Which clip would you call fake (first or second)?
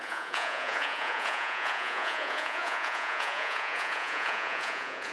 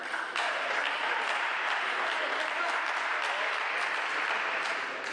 first